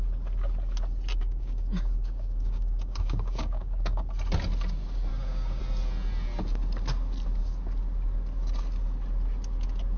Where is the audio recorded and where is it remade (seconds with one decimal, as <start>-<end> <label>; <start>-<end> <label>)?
0.0-1.2 recorded; 1.2-4.0 remade; 4.0-5.1 recorded; 5.1-5.6 remade; 5.6-10.0 recorded